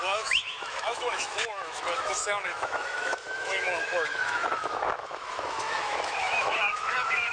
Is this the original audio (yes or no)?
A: no